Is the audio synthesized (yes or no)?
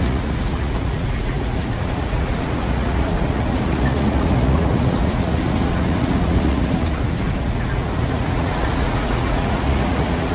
yes